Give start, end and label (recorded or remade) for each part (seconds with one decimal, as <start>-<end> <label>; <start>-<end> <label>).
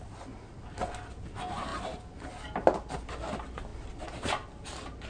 0.0-5.1 recorded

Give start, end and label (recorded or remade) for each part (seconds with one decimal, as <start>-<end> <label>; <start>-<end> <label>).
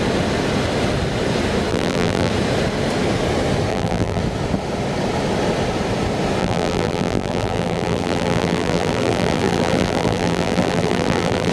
0.0-1.7 recorded; 1.7-2.3 remade; 2.3-3.7 recorded; 3.7-4.2 remade; 4.2-6.4 recorded; 6.4-11.5 remade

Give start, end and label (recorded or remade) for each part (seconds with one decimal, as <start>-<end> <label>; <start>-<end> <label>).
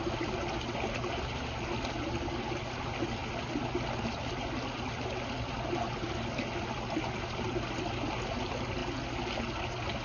0.0-10.0 recorded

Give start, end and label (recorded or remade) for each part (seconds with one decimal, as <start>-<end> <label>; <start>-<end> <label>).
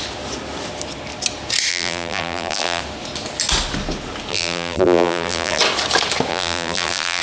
0.0-1.7 recorded; 1.7-2.8 remade; 2.8-4.3 recorded; 4.3-5.6 remade; 5.6-6.3 recorded; 6.3-7.2 remade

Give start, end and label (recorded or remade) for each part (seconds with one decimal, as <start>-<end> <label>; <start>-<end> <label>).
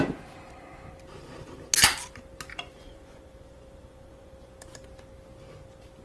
0.0-2.5 recorded; 2.5-4.5 remade; 4.5-6.0 recorded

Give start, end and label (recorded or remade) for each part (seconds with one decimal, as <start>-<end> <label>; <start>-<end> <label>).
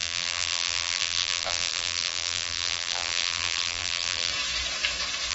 0.0-4.3 remade; 4.3-5.3 recorded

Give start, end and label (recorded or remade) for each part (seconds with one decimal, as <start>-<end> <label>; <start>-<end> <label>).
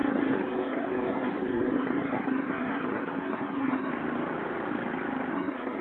0.0-3.9 remade; 3.9-5.3 recorded; 5.3-5.8 remade